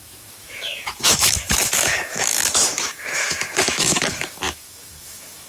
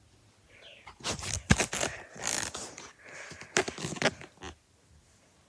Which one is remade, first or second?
first